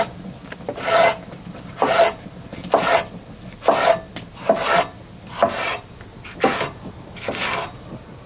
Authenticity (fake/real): real